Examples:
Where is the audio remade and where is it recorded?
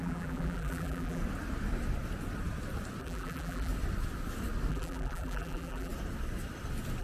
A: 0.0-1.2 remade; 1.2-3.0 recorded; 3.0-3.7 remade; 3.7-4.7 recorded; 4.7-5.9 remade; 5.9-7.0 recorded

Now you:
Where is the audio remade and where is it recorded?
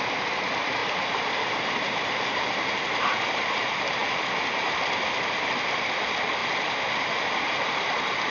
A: 0.0-0.8 recorded; 0.8-3.5 remade; 3.5-6.4 recorded; 6.4-7.9 remade; 7.9-8.3 recorded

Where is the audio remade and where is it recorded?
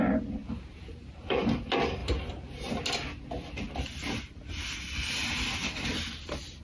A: 0.0-0.4 recorded; 0.4-1.4 remade; 1.4-2.0 recorded; 2.0-2.7 remade; 2.7-6.6 recorded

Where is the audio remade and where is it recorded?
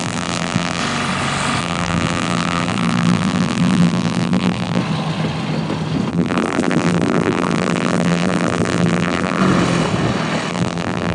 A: 0.0-0.8 remade; 0.8-1.6 recorded; 1.6-4.8 remade; 4.8-6.1 recorded; 6.1-9.4 remade; 9.4-10.5 recorded; 10.5-11.1 remade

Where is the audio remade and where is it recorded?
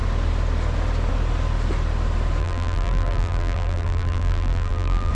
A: 0.0-2.4 recorded; 2.4-5.1 remade